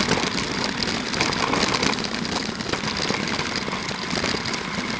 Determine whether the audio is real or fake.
real